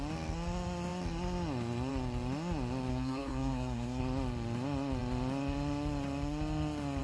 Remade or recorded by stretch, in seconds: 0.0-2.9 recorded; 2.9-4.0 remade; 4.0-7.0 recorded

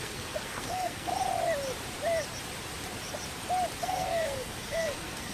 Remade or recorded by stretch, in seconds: 0.0-1.1 remade; 1.1-3.8 recorded; 3.8-5.3 remade

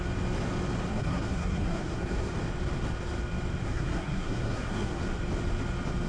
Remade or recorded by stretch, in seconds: 0.0-0.9 recorded; 0.9-2.3 remade; 2.3-3.6 recorded; 3.6-5.0 remade; 5.0-6.1 recorded

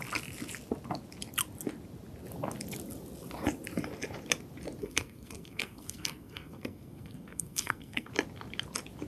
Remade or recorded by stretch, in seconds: 0.0-4.8 recorded; 4.8-8.1 remade; 8.1-9.1 recorded

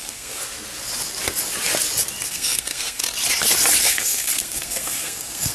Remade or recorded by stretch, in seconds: 0.0-0.4 remade; 0.4-2.3 recorded; 2.3-3.0 remade; 3.0-3.8 recorded; 3.8-5.5 remade